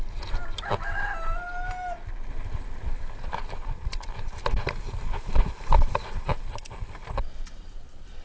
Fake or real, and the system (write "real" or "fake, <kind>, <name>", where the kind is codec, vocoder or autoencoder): real